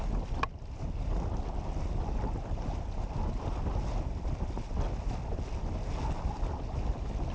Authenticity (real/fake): real